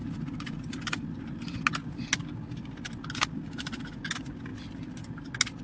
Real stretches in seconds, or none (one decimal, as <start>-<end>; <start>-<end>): 0.0-5.6